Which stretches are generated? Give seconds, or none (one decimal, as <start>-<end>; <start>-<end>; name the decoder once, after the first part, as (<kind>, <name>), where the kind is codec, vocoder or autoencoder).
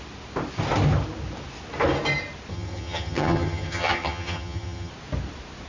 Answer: 2.5-4.9 (vocoder, HiFi-GAN)